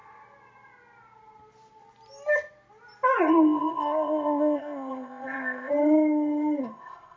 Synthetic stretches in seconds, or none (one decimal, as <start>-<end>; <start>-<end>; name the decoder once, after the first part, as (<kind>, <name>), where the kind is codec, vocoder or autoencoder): 3.2-5.7 (codec, ZipCodec); 6.6-7.2

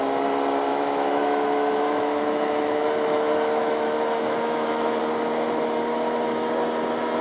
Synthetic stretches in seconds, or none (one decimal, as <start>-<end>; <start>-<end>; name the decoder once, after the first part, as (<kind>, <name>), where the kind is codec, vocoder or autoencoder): 0.7-5.0 (autoencoder, DAC-VAE)